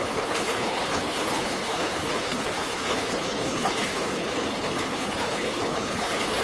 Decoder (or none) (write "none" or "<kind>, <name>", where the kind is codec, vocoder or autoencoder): codec, HILCodec